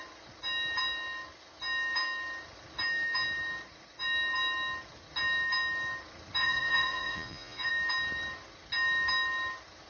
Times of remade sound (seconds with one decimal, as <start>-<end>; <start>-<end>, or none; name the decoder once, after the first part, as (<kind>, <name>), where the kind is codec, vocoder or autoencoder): 6.4-7.7 (vocoder, Vocos)